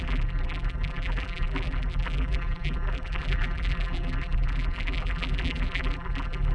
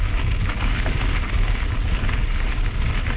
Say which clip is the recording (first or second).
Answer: second